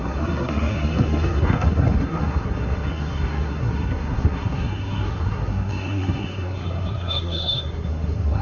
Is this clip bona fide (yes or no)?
no